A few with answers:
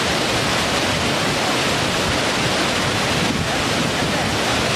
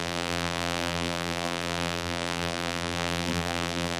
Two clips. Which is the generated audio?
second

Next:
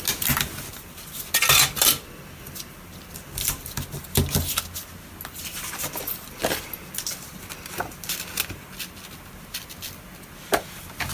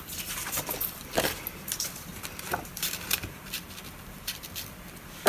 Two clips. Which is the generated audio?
second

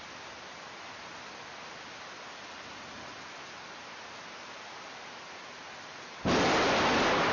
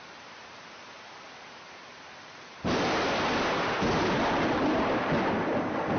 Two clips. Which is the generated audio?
second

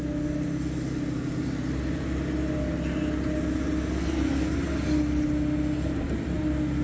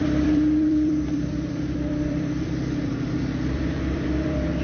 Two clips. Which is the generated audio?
second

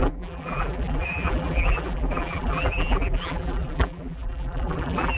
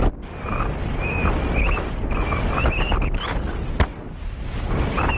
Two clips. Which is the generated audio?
first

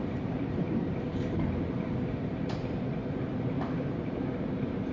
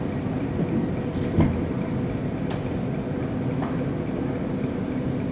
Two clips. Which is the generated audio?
first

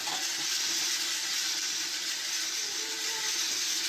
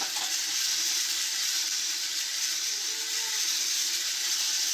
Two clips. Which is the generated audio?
second